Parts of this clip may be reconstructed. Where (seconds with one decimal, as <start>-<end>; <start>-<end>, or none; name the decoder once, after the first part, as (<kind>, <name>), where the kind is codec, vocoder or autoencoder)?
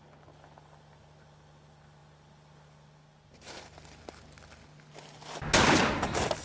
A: none